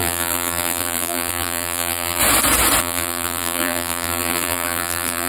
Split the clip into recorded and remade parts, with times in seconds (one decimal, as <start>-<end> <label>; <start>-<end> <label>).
0.0-2.2 remade; 2.2-2.8 recorded; 2.8-5.3 remade